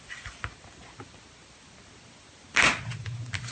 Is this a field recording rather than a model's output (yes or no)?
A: yes